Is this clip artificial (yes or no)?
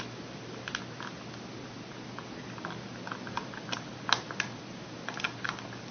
no